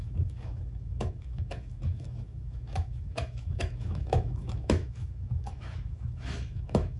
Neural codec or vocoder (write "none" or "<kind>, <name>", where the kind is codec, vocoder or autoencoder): autoencoder, DAC-VAE